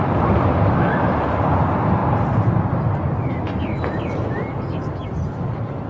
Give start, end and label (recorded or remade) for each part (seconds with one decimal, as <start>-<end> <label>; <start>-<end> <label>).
0.0-5.9 recorded